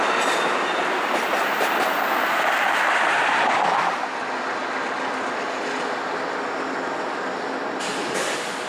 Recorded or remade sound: recorded